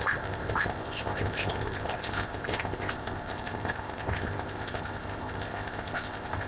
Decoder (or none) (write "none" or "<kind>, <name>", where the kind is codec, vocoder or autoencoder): codec, ZipCodec